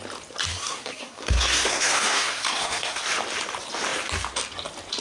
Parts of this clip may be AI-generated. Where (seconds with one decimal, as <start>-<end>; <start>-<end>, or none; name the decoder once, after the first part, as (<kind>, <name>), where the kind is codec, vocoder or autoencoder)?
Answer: 0.5-3.0 (codec, SNAC)